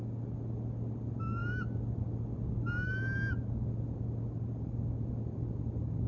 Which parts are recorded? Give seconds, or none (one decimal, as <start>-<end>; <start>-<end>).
0.0-6.1